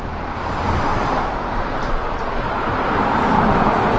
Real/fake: real